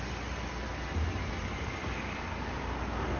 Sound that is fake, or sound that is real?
real